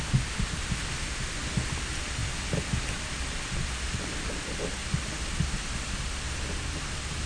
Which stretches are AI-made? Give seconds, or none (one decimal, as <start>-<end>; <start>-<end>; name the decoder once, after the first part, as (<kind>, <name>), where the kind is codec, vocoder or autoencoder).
none